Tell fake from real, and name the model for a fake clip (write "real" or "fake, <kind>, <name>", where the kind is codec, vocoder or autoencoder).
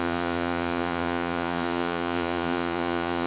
fake, vocoder, Vocos